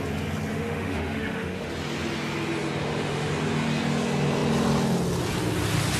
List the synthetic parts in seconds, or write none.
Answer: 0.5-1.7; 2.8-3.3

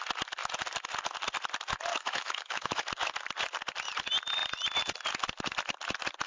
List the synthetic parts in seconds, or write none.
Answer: 1.9-2.9

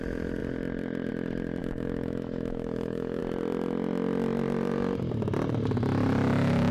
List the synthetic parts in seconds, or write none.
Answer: 1.6-3.2

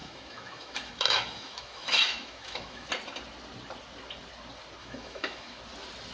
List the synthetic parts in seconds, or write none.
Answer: 0.0-2.9; 4.8-5.6

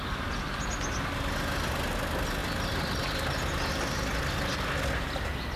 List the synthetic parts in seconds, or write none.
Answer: none